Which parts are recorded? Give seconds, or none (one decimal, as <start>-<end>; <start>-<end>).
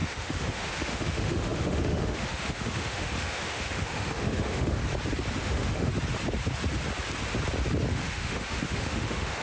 4.8-5.4; 5.9-7.9